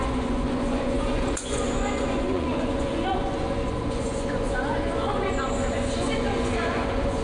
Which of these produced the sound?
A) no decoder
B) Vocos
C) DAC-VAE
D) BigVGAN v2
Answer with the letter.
B